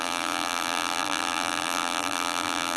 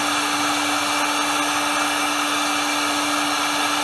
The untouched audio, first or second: second